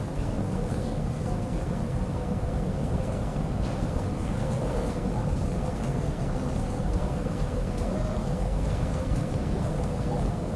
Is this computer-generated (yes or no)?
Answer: yes